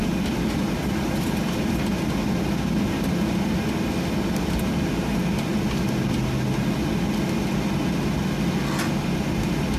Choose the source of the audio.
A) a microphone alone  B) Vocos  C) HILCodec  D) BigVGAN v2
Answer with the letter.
A